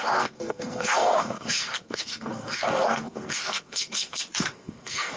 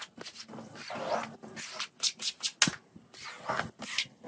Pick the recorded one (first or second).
second